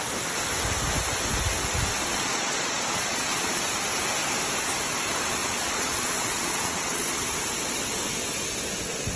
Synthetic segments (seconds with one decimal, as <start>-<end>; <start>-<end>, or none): 2.1-3.8; 5.4-7.2